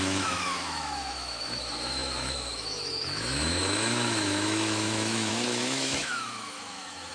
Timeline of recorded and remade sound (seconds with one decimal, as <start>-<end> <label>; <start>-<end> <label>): 0.0-7.1 remade

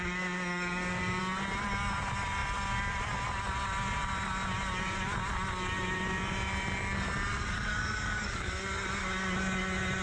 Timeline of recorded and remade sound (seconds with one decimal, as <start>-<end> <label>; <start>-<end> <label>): 0.0-0.5 recorded; 0.5-1.2 remade; 1.2-7.3 recorded; 7.3-8.5 remade; 8.5-10.0 recorded

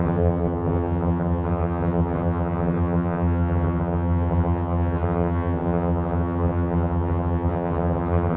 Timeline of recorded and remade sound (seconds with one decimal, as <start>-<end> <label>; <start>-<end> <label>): 0.0-8.4 remade

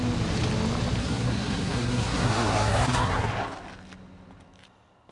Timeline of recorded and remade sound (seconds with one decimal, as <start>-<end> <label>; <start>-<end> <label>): 0.0-1.0 recorded; 1.0-3.3 remade; 3.3-5.1 recorded

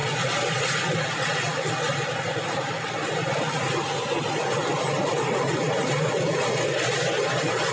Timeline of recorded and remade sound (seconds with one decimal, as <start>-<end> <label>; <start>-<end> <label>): 0.0-7.7 recorded

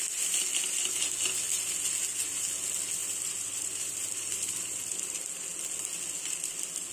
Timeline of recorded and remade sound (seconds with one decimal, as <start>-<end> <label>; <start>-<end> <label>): 0.0-3.0 recorded; 3.0-5.3 remade; 5.3-6.9 recorded

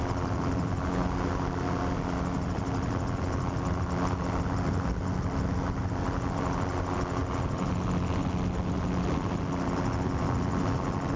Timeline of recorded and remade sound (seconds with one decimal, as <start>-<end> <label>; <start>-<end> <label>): 0.0-11.2 recorded

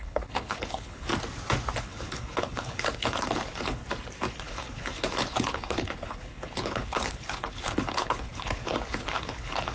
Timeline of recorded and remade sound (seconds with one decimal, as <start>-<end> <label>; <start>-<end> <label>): 0.0-1.1 remade; 1.1-1.8 recorded; 1.8-3.8 remade; 3.8-4.3 recorded; 4.3-9.7 remade